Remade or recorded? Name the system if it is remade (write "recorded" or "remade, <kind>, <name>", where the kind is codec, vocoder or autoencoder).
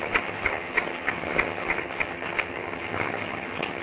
remade, vocoder, HiFi-GAN